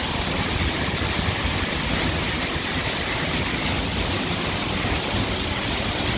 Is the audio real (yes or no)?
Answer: yes